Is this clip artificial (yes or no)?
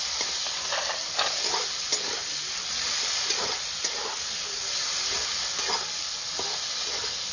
no